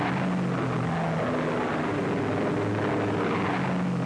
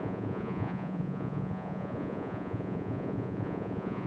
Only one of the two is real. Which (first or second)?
first